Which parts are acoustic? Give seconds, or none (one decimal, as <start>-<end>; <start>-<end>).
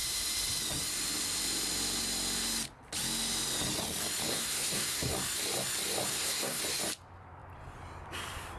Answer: 0.0-4.3; 5.1-6.1; 6.6-8.6